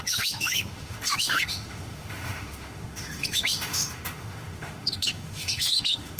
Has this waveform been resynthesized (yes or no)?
yes